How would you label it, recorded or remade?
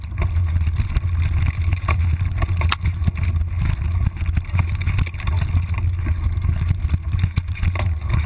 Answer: recorded